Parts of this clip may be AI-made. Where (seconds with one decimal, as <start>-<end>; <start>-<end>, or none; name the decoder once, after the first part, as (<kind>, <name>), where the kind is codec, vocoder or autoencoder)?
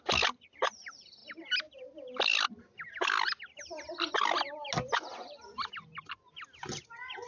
none